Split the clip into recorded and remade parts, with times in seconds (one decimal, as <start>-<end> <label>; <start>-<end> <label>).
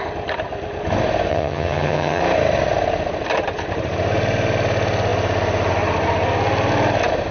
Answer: 0.0-1.3 recorded; 1.3-2.2 remade; 2.2-7.3 recorded